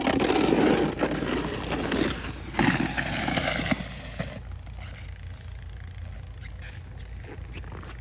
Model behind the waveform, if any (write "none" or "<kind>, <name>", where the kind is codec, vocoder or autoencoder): none